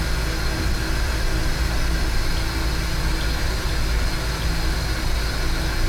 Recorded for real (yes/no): yes